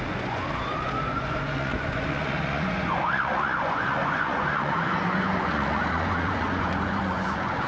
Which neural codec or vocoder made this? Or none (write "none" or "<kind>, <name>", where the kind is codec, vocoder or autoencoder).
vocoder, Vocos